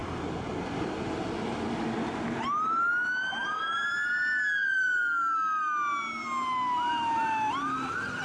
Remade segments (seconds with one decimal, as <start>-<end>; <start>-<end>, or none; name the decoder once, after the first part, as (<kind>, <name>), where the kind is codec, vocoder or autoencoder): none